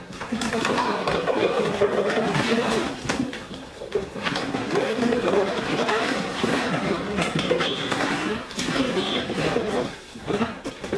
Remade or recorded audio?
remade